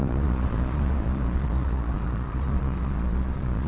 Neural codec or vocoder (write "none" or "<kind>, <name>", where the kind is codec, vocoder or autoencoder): vocoder, Vocos